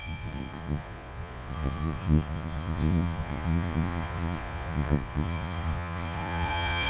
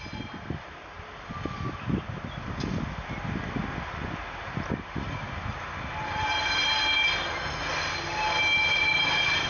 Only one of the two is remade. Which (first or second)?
first